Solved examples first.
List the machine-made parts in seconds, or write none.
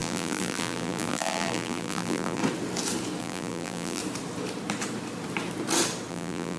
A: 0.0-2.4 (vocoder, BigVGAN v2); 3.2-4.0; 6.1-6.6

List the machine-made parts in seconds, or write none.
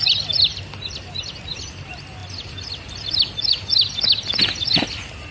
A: none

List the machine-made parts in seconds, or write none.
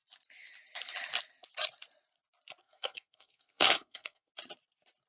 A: 2.6-4.3 (codec, SNAC)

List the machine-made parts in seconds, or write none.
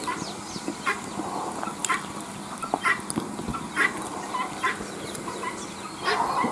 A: none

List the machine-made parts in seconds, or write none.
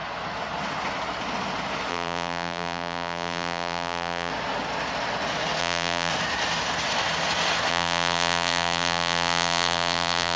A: 1.9-4.3 (vocoder, BigVGAN v2); 5.6-6.1; 7.7-10.4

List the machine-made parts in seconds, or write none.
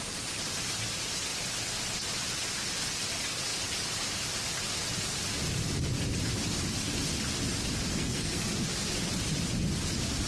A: 7.9-8.5 (codec, SNAC)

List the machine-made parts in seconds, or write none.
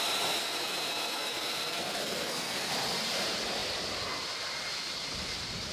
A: 0.4-2.7 (codec, SNAC)